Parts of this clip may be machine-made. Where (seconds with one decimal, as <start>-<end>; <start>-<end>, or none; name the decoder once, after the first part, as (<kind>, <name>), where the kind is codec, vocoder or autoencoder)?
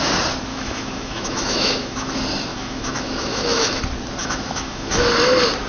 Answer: 0.5-2.1 (autoencoder, DAC-VAE); 2.5-3.8; 4.2-4.9